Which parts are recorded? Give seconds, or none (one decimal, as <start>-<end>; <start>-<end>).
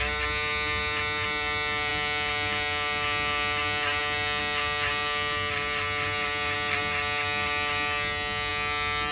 0.0-9.1